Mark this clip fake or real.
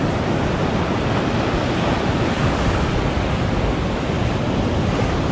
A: real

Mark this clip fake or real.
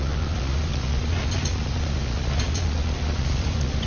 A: fake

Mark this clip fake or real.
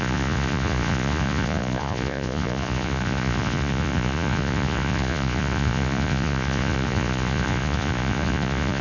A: fake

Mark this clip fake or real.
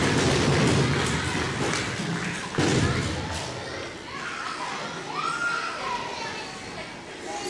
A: real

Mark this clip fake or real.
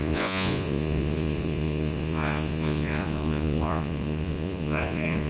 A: fake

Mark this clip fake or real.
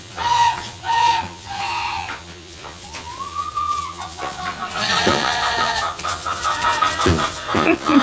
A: fake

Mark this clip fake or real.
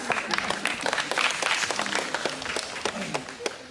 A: real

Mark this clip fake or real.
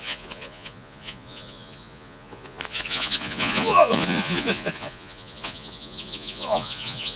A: fake